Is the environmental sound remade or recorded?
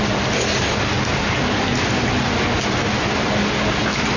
recorded